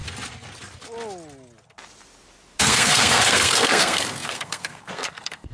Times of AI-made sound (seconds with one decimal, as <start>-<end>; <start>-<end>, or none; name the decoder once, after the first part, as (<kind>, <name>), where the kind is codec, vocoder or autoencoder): 2.6-5.5 (codec, SNAC)